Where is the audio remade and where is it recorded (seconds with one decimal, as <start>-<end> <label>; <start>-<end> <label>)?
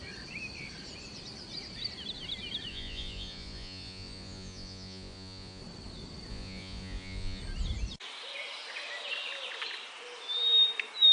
0.0-2.7 recorded; 2.7-5.6 remade; 5.6-6.3 recorded; 6.3-7.4 remade; 7.4-11.1 recorded